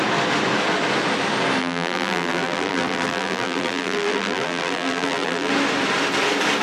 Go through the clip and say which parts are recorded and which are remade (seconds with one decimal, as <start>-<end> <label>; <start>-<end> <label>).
0.0-1.6 recorded; 1.6-5.5 remade; 5.5-6.6 recorded